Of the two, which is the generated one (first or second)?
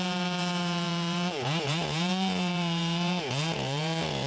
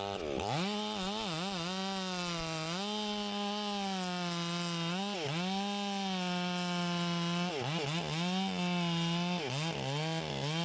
first